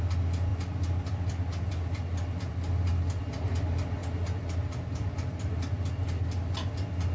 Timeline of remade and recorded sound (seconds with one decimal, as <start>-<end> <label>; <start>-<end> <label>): 0.0-7.1 recorded